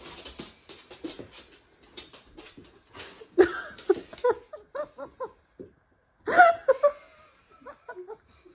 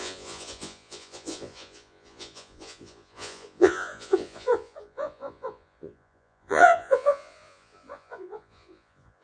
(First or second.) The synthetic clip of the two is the second